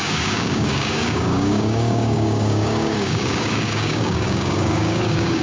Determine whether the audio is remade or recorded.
remade